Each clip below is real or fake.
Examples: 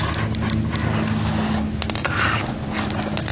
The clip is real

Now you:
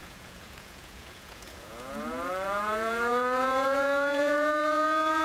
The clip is fake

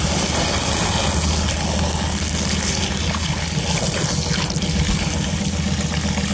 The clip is real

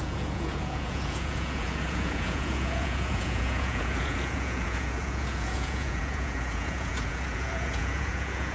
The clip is fake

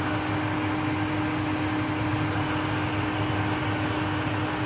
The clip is real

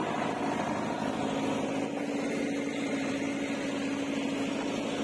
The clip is real